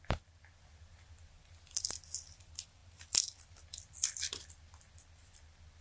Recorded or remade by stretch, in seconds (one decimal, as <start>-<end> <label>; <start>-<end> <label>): 0.0-5.8 remade